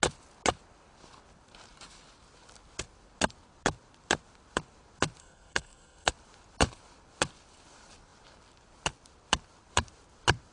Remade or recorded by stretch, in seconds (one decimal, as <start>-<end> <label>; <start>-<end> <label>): 0.0-5.2 recorded; 5.2-6.1 remade; 6.1-10.5 recorded